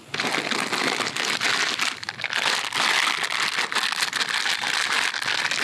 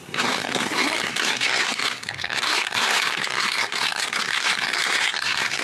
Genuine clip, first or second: first